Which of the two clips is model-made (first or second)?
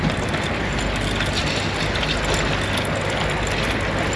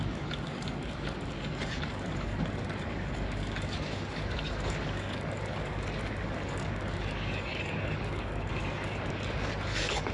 second